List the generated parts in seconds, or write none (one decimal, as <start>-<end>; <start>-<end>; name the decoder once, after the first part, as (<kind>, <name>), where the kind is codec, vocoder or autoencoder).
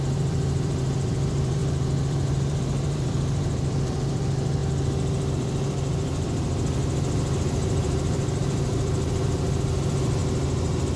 0.0-4.6 (vocoder, BigVGAN v2); 5.3-6.8; 7.5-10.2